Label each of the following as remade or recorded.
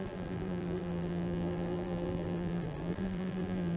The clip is remade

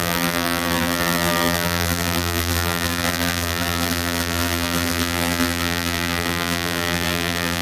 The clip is remade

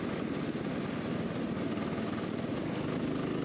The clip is recorded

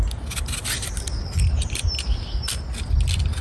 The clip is recorded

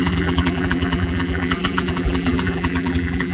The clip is remade